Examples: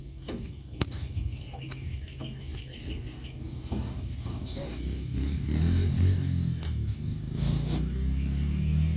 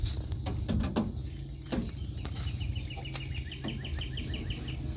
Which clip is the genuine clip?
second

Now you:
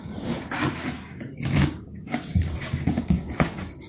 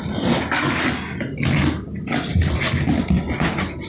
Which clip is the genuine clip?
second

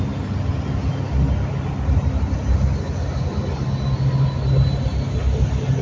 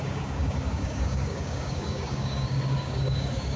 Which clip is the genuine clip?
first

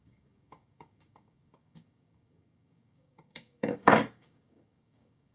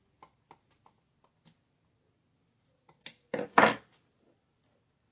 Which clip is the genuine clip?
second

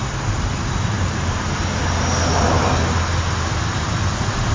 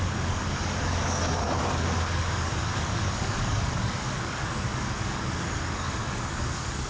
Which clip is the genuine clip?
first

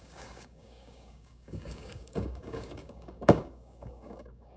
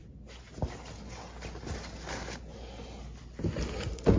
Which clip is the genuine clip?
second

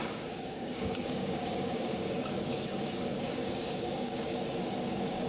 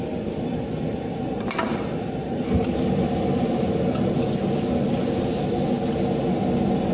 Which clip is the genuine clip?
second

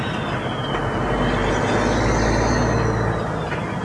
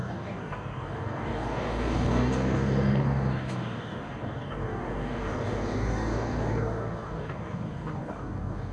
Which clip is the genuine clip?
first